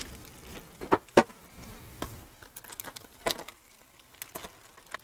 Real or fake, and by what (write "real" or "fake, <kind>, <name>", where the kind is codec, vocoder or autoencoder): real